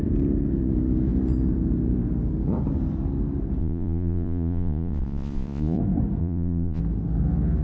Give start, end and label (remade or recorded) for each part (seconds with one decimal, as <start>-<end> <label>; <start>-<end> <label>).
0.0-3.6 recorded; 3.6-5.8 remade; 5.8-6.2 recorded; 6.2-6.8 remade; 6.8-7.6 recorded